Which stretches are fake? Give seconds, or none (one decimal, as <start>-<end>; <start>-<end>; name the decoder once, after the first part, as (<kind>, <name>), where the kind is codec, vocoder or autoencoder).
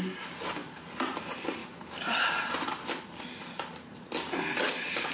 0.0-1.6 (vocoder, BigVGAN v2); 3.2-5.1